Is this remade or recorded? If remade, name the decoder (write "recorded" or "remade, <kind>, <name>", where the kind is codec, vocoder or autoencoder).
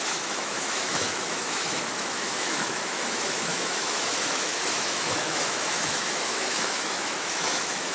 remade, autoencoder, DAC-VAE